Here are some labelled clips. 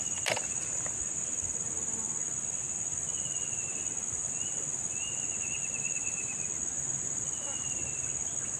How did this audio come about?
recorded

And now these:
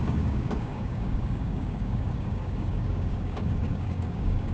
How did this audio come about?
remade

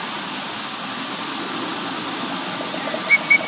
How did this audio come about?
recorded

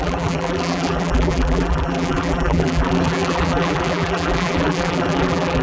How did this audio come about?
remade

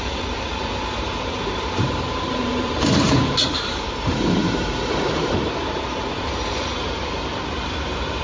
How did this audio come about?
remade